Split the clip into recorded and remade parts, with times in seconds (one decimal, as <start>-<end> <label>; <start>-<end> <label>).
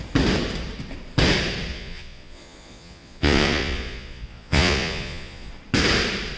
0.0-1.7 recorded; 1.7-5.5 remade; 5.5-6.4 recorded